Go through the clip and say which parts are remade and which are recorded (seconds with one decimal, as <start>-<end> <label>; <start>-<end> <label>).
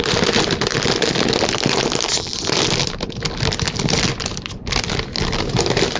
0.0-6.0 recorded